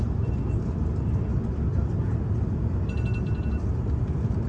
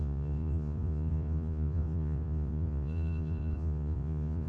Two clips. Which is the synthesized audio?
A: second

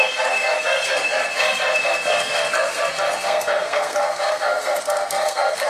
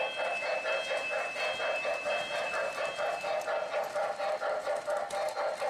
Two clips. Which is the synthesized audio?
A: first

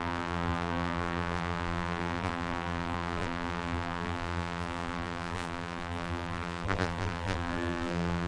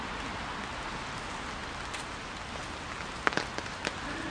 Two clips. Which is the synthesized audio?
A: first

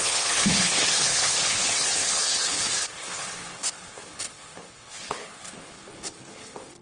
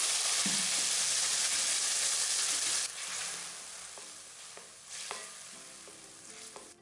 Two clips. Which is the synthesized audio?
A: first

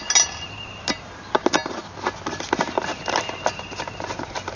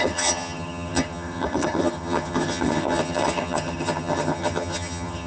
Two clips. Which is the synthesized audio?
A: second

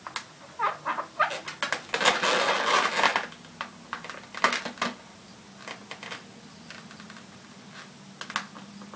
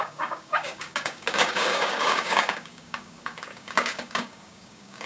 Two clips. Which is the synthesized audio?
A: second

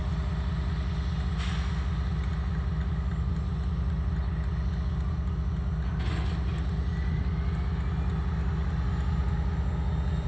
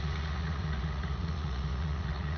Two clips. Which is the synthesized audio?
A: second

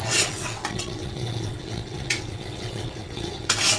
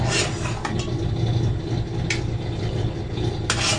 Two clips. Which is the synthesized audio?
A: first